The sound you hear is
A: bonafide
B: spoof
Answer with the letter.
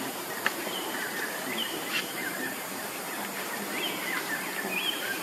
B